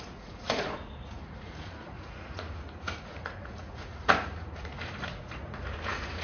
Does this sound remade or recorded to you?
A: remade